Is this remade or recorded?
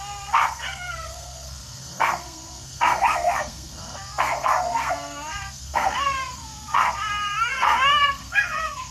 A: remade